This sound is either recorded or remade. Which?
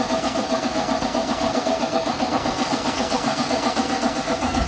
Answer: remade